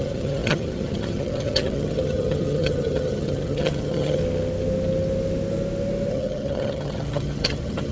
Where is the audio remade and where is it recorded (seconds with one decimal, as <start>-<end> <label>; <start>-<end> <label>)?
0.0-4.2 remade; 4.2-6.1 recorded; 6.1-7.9 remade